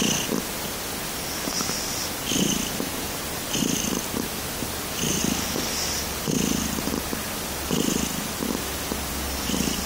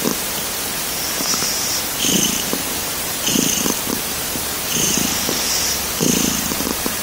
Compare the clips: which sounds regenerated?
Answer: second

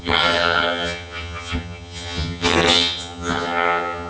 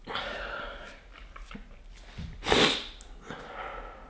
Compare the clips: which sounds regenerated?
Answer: first